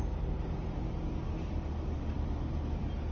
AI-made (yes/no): no